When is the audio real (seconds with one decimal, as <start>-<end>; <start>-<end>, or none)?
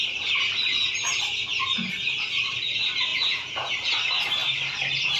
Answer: 0.0-3.1; 3.7-5.2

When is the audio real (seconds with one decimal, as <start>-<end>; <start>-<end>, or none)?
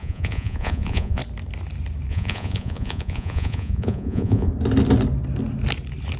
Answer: 1.2-2.1; 4.5-6.2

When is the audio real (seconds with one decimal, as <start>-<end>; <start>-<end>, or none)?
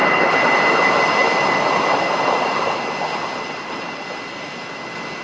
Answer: 0.0-5.2